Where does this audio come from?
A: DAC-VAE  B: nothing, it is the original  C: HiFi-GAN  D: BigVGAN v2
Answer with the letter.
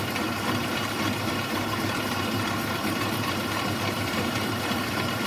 D